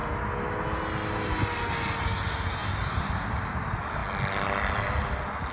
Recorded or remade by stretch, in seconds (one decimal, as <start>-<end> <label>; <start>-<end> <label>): 0.0-2.6 recorded; 2.6-3.6 remade; 3.6-5.5 recorded